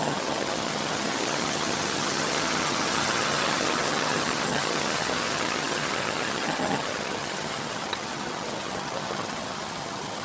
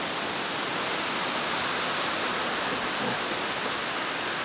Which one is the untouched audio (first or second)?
second